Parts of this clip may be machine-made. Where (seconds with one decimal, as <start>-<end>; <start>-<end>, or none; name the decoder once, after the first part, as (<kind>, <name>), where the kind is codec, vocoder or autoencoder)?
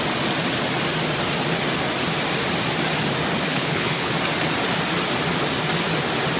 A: 3.5-4.1 (codec, HILCodec)